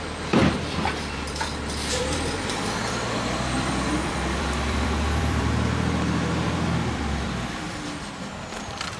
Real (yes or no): no